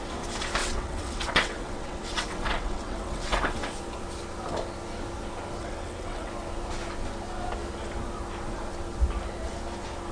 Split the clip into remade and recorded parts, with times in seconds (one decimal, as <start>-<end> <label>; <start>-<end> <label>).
0.0-0.6 recorded; 0.6-3.6 remade; 3.6-5.6 recorded; 5.6-6.3 remade; 6.3-10.1 recorded